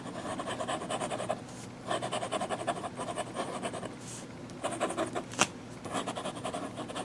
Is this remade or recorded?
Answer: recorded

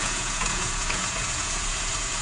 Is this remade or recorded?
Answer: remade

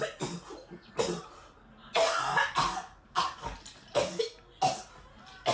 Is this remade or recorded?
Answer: recorded